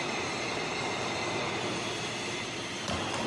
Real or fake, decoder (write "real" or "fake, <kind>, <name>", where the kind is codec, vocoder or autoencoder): real